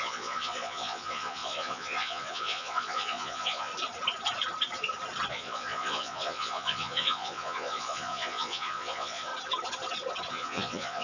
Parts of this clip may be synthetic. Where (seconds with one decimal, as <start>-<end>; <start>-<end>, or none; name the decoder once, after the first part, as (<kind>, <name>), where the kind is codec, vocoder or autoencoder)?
0.0-3.7 (vocoder, Vocos); 5.3-9.3; 10.3-11.0

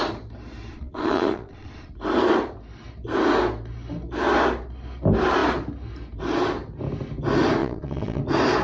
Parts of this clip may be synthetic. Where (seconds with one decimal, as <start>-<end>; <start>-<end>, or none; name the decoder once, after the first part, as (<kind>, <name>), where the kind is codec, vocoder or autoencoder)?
0.7-1.9 (vocoder, Vocos); 7.6-8.2

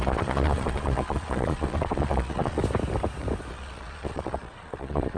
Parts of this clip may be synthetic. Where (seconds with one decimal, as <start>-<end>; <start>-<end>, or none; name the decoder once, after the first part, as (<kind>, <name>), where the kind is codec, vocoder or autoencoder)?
0.0-2.6 (vocoder, Vocos); 3.5-5.2

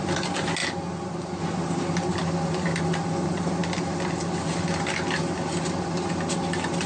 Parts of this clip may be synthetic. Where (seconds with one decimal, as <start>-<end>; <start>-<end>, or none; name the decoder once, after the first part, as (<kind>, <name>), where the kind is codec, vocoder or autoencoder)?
none

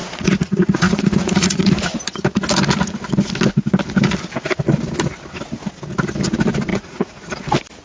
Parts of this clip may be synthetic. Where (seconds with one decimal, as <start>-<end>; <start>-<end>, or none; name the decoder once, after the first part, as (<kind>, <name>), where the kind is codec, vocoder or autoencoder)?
0.0-1.7 (vocoder, Vocos); 6.7-7.3

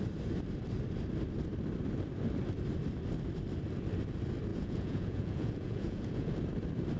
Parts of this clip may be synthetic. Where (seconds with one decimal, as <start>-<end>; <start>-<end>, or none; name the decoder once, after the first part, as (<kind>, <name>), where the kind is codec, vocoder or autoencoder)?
4.5-6.3 (vocoder, Vocos)

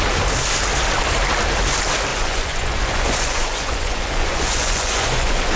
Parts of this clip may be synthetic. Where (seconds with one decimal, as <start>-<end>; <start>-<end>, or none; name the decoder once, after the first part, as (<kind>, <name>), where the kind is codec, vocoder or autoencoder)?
2.1-5.6 (vocoder, Vocos)

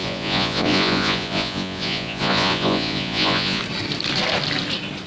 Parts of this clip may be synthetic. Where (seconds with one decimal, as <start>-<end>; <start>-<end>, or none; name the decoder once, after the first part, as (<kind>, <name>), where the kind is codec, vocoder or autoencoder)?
0.0-3.6 (vocoder, Vocos)